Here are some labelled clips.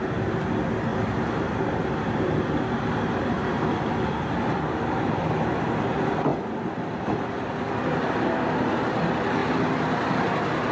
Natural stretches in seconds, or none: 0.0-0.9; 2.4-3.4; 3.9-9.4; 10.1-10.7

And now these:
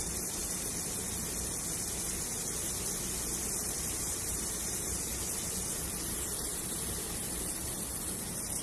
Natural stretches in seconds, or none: 0.7-3.6

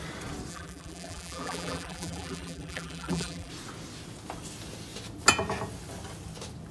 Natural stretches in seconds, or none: 0.0-0.5; 3.5-6.7

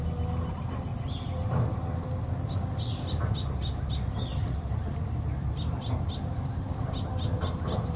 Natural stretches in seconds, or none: 0.0-4.3; 4.9-8.0

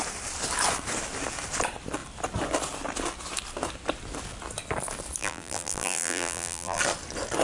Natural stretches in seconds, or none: 0.0-5.2; 6.8-7.4

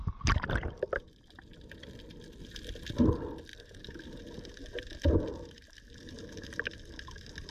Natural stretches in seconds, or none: 1.3-3.5; 6.2-7.5